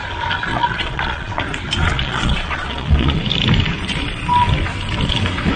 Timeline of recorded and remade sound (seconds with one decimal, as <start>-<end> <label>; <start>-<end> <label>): 0.0-0.5 recorded; 0.5-1.4 remade; 1.4-1.8 recorded; 1.8-3.2 remade; 3.2-5.6 recorded